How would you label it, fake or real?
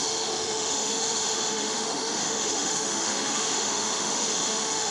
fake